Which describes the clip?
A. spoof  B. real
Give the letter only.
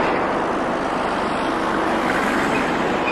B